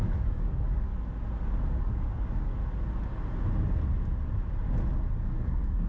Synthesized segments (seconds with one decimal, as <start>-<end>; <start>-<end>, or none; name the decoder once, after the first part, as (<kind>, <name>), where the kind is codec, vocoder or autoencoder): 0.0-0.9 (codec, DAC); 1.8-2.6; 5.2-5.9